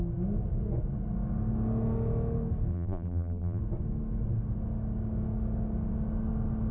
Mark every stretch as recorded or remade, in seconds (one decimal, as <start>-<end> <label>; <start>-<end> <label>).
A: 0.0-2.7 recorded; 2.7-3.6 remade; 3.6-6.7 recorded